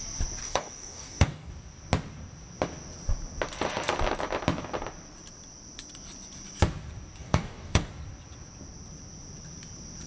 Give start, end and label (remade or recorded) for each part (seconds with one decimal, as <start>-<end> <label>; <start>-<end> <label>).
0.0-0.4 recorded; 0.4-1.5 remade; 1.5-7.2 recorded; 7.2-7.9 remade; 7.9-10.1 recorded